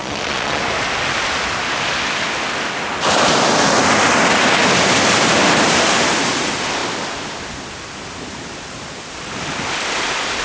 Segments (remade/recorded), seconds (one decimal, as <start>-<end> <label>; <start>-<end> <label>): 0.0-0.6 remade; 0.6-10.4 recorded